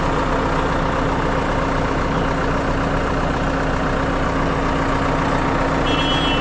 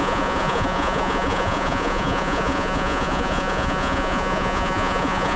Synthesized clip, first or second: second